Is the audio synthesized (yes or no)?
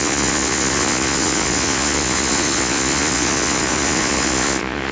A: yes